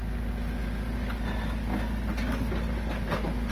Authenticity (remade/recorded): recorded